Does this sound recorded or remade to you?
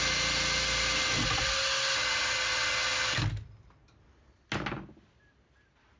recorded